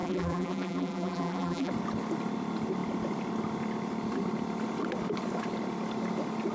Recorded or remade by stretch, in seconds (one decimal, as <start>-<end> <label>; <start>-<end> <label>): 0.0-1.7 remade; 1.7-6.5 recorded